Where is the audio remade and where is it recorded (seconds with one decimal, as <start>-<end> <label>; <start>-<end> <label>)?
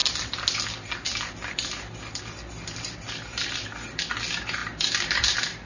0.0-5.7 recorded